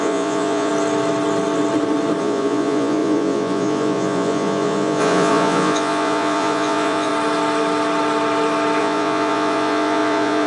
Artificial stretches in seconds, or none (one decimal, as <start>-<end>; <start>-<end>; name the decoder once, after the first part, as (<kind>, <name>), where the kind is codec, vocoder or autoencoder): 0.0-0.7 (vocoder, Vocos); 2.2-7.1; 8.8-10.5